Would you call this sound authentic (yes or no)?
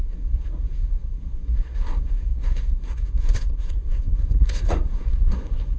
no